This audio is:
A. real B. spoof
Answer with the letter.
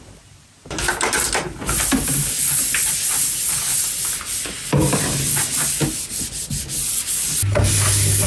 A